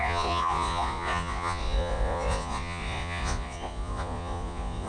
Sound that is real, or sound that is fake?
fake